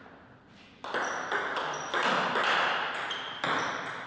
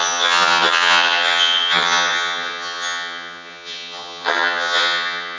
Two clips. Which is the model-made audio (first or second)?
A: second